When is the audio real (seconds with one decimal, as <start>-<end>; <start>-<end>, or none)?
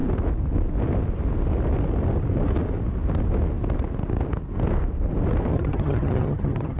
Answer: 0.0-5.5